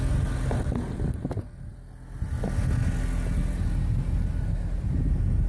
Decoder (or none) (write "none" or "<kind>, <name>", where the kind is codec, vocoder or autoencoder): none